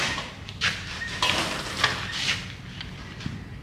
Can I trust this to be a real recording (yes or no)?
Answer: yes